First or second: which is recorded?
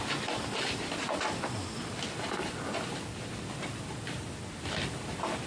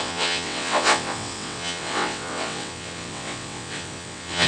first